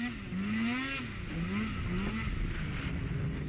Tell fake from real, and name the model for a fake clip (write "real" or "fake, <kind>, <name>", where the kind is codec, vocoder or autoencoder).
real